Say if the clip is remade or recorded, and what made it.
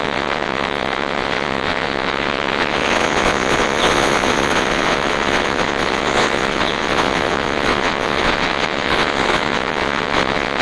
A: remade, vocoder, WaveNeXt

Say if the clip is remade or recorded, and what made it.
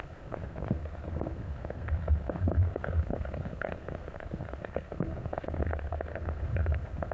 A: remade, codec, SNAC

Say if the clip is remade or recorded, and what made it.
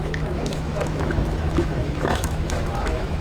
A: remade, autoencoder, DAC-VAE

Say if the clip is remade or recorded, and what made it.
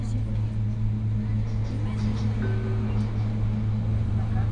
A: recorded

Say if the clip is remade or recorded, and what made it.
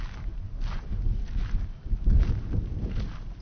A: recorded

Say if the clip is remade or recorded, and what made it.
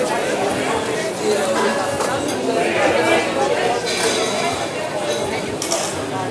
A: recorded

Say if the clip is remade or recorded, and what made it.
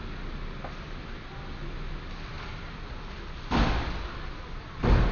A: recorded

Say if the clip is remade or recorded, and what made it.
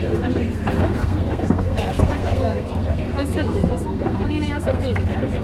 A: remade, codec, SNAC